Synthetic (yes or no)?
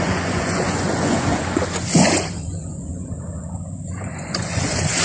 yes